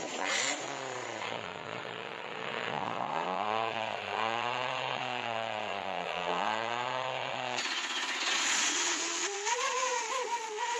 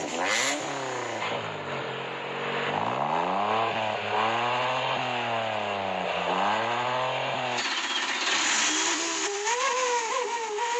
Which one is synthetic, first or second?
first